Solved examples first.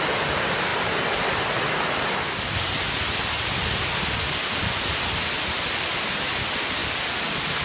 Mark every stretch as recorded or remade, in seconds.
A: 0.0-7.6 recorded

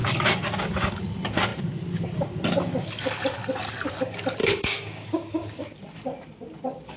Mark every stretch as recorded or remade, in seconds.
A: 0.0-0.6 remade; 0.6-4.4 recorded; 4.4-5.6 remade; 5.6-7.0 recorded